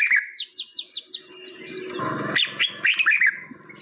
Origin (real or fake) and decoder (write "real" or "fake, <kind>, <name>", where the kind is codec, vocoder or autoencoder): real